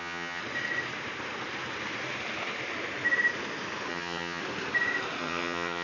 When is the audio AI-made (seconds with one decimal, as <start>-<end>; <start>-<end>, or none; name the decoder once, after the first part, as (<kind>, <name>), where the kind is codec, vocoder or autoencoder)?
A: 0.0-0.4 (vocoder, HiFi-GAN); 3.9-4.4; 5.2-5.8